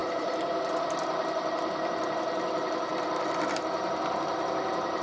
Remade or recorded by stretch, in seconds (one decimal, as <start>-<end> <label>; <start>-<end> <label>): 0.0-2.1 remade; 2.1-2.9 recorded; 2.9-3.5 remade; 3.5-5.0 recorded

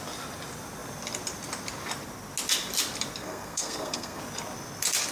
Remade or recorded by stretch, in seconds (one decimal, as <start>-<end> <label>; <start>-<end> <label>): 0.0-3.2 recorded; 3.2-4.2 remade; 4.2-5.1 recorded

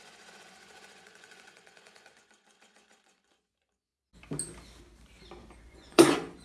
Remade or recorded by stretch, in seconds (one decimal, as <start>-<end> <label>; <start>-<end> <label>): 0.0-3.9 remade; 3.9-5.6 recorded; 5.6-6.4 remade

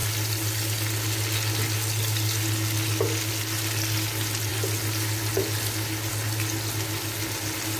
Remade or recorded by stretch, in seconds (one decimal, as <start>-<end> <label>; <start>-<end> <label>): 0.0-7.8 recorded

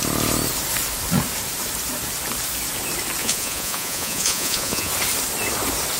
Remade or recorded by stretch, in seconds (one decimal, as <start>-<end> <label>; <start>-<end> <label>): 0.0-3.2 recorded; 3.2-4.9 remade; 4.9-6.0 recorded